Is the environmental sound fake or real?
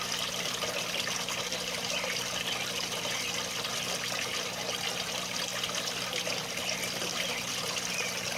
real